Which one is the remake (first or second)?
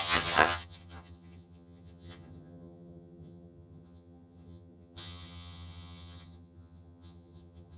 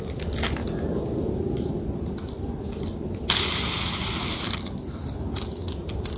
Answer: first